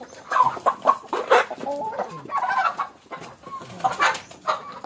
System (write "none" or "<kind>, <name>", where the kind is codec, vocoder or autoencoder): none